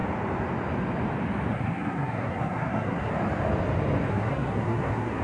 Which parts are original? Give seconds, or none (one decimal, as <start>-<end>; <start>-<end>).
0.0-1.5; 3.1-4.1